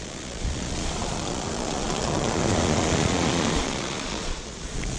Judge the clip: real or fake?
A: fake